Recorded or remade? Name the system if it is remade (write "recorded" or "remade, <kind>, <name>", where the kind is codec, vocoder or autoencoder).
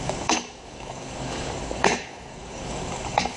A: remade, codec, DAC